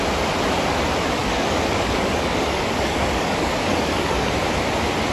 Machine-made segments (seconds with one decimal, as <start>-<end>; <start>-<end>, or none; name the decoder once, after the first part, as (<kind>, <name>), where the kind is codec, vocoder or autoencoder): 1.2-4.3 (codec, DAC)